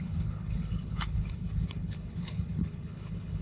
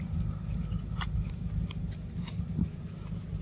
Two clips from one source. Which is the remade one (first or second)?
first